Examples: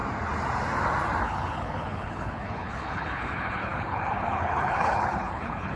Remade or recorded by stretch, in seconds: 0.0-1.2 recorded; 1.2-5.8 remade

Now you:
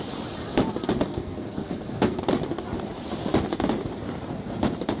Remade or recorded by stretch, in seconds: 0.0-1.1 recorded; 1.1-2.2 remade; 2.2-5.0 recorded

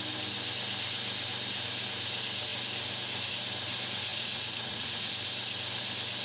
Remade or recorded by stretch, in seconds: 0.0-4.1 recorded; 4.1-5.1 remade; 5.1-6.2 recorded

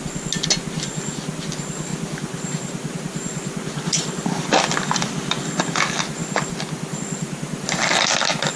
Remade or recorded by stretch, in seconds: 0.0-1.9 recorded; 1.9-5.1 remade; 5.1-6.2 recorded; 6.2-7.0 remade; 7.0-8.6 recorded

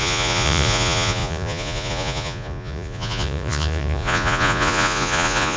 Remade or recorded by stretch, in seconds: 0.0-5.6 remade

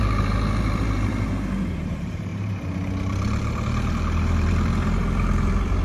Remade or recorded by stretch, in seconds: 0.0-5.8 remade

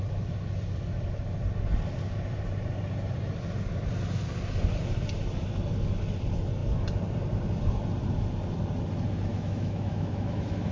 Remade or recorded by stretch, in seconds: 0.0-9.3 recorded; 9.3-10.7 remade

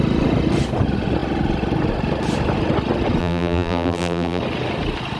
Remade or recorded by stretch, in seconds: 0.0-3.2 recorded; 3.2-4.4 remade; 4.4-5.2 recorded